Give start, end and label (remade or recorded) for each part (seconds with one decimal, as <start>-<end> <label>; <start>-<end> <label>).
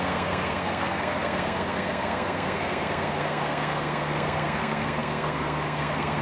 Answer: 0.0-6.2 remade